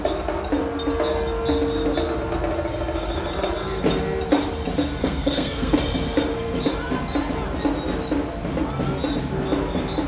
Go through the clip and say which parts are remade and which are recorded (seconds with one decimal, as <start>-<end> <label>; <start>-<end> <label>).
0.0-5.0 recorded; 5.0-5.8 remade; 5.8-10.1 recorded